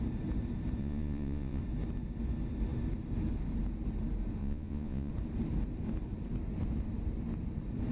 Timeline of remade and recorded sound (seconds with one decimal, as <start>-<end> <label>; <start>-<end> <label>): 0.0-0.8 recorded; 0.8-1.6 remade; 1.6-4.4 recorded; 4.4-5.1 remade; 5.1-7.9 recorded